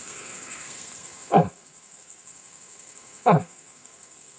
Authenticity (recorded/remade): remade